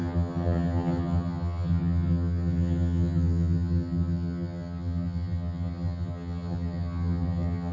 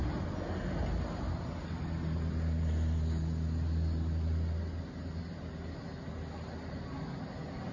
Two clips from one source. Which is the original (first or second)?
second